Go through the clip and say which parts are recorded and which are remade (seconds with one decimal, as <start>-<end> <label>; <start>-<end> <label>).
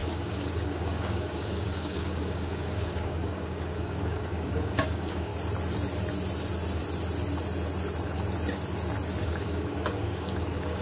0.0-5.3 remade; 5.3-9.2 recorded; 9.2-10.8 remade